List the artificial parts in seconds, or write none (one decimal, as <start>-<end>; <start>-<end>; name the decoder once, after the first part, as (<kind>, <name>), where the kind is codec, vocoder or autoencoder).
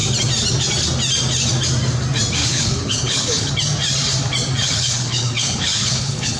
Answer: 2.4-3.5 (codec, HILCodec); 4.6-6.4